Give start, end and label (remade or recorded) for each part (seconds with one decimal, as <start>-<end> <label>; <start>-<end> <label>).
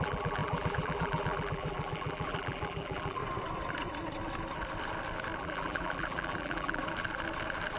0.0-3.2 remade; 3.2-5.4 recorded; 5.4-6.8 remade; 6.8-7.8 recorded